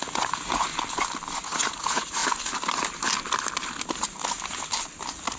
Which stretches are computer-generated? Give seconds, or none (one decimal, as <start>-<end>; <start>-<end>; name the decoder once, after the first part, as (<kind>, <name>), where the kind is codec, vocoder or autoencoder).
0.0-0.7 (vocoder, Vocos); 1.3-2.2